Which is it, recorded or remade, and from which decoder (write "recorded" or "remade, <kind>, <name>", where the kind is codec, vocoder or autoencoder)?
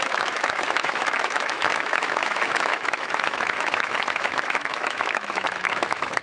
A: remade, autoencoder, DAC-VAE